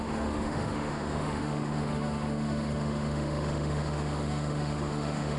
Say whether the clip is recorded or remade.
remade